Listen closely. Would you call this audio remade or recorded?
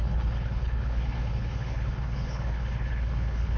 remade